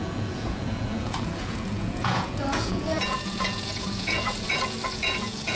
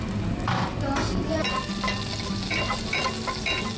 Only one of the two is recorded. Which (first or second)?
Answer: second